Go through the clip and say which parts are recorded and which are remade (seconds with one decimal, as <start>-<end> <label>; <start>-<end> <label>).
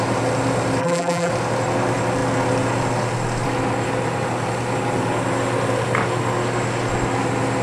0.0-0.8 recorded; 0.8-1.3 remade; 1.3-7.6 recorded